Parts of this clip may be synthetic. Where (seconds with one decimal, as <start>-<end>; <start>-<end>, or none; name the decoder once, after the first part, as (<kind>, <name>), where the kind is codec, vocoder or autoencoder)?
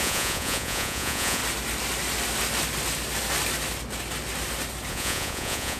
0.0-1.4 (vocoder, Vocos); 4.9-5.8